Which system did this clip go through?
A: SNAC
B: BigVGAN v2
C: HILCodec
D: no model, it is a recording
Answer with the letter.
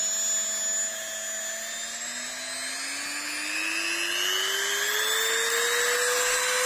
D